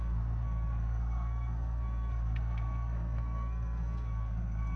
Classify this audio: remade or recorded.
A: remade